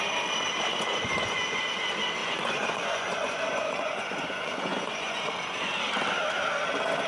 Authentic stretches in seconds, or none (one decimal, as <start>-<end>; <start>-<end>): 0.0-0.7; 1.6-2.2; 5.7-7.1